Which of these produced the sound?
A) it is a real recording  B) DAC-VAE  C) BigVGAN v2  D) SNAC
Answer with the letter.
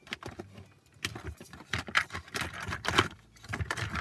A